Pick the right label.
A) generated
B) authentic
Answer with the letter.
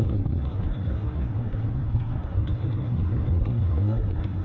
A